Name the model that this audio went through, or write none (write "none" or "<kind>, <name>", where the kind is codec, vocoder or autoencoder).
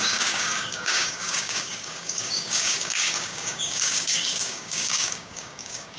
codec, DAC